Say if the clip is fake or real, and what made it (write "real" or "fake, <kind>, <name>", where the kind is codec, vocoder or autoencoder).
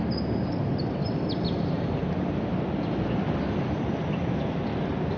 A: real